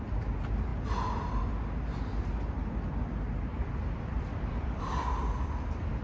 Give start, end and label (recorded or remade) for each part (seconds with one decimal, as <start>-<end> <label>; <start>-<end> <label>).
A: 0.0-3.5 recorded; 3.5-4.8 remade; 4.8-6.0 recorded